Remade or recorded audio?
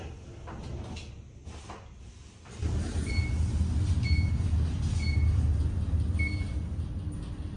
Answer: recorded